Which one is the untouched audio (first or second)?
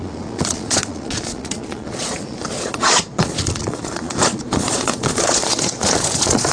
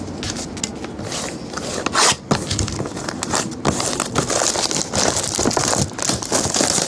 second